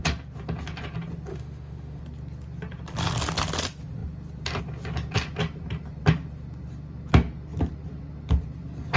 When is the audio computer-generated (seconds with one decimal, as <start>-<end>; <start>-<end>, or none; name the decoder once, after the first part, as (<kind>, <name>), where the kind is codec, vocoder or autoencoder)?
1.3-2.0 (autoencoder, DAC-VAE)

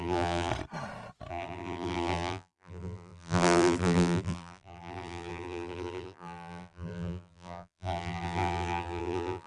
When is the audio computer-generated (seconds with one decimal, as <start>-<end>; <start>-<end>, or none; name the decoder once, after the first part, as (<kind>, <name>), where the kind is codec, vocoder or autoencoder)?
0.0-0.5 (vocoder, BigVGAN v2); 1.3-9.5

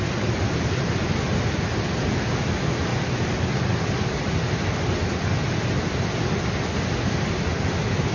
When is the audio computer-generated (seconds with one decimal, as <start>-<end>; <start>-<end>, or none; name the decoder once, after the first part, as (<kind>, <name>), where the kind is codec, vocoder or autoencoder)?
none

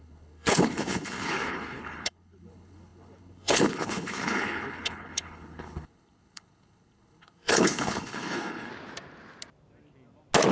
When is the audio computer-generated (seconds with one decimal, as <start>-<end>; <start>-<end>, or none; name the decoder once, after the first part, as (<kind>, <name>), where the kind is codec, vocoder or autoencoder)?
0.0-8.7 (codec, HILCodec)

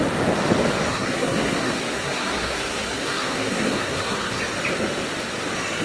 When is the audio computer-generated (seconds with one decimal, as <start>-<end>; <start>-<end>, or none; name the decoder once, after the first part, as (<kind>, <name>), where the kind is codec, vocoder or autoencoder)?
0.9-4.4 (codec, SNAC)